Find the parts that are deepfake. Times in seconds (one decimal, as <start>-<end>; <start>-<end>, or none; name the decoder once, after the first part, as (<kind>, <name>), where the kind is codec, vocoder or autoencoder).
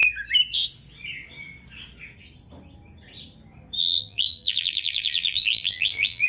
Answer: 3.8-6.3 (vocoder, BigVGAN v2)